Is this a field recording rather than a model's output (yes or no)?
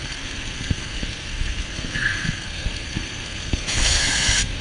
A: no